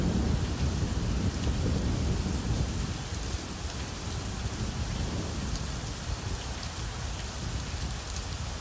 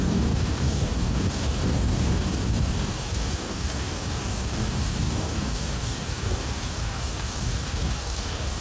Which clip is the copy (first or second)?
second